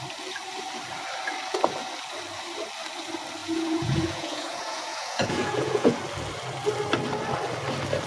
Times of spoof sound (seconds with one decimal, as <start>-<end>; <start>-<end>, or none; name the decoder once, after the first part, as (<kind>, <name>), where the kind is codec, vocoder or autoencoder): 3.4-6.0 (vocoder, Vocos)

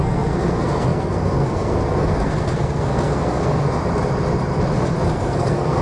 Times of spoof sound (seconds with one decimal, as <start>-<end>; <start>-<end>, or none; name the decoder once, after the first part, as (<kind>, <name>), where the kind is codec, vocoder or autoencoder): 0.0-3.8 (codec, SNAC); 5.1-5.8

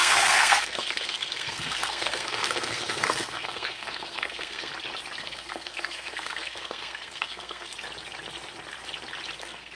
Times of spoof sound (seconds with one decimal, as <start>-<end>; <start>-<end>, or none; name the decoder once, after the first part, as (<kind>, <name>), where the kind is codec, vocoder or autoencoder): 0.0-4.7 (codec, SNAC); 5.2-7.7; 9.4-9.8

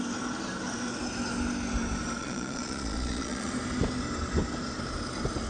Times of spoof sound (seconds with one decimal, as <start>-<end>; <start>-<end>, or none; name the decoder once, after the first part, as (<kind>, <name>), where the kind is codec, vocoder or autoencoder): 2.2-3.5 (vocoder, Vocos)

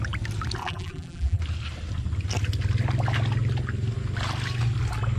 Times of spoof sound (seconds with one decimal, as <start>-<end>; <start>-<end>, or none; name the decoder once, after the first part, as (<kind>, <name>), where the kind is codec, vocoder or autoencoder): 0.6-1.4 (vocoder, BigVGAN v2)

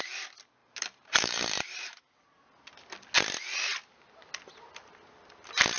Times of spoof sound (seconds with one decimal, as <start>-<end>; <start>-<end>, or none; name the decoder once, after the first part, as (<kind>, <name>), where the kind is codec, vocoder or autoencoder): 0.6-2.0 (vocoder, BigVGAN v2)

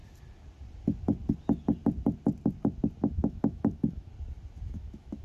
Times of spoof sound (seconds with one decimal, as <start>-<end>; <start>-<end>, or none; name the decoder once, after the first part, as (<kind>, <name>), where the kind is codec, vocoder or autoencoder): 3.1-4.1 (autoencoder, DAC-VAE); 4.7-5.2